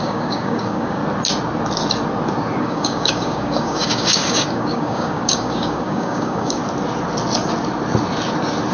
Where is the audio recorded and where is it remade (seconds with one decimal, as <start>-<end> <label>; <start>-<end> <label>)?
0.0-1.0 remade; 1.0-2.6 recorded; 2.6-6.6 remade; 6.6-8.7 recorded